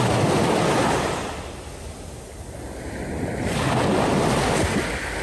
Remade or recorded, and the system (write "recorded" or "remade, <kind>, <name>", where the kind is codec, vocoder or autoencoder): recorded